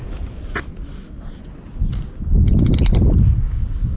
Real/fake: real